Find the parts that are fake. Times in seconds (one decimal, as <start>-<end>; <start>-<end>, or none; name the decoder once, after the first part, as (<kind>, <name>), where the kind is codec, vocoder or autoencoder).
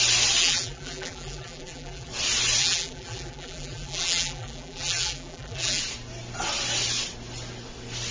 0.4-2.1 (vocoder, BigVGAN v2); 2.6-5.8